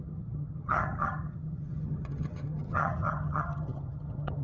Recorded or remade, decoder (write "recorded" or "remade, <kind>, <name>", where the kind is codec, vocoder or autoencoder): remade, vocoder, HiFi-GAN